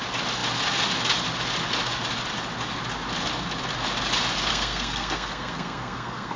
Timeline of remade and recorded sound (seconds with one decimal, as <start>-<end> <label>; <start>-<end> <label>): 0.0-4.5 recorded; 4.5-6.4 remade